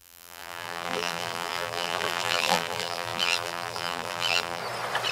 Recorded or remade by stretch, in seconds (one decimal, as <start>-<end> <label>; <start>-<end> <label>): 0.0-4.6 remade; 4.6-5.1 recorded